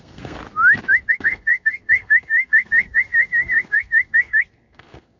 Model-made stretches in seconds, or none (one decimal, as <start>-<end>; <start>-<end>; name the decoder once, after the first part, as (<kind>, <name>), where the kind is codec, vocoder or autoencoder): 0.0-0.4 (codec, SNAC); 1.1-5.2